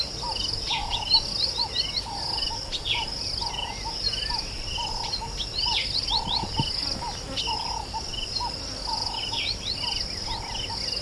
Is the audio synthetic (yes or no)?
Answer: no